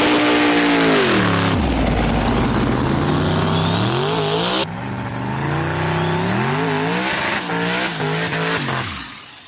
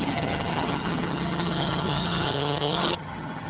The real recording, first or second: first